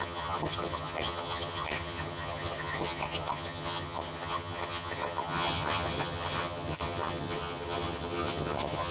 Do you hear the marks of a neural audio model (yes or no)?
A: yes